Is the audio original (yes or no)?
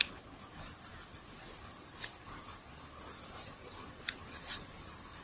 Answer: yes